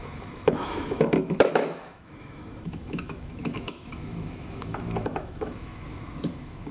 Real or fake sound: fake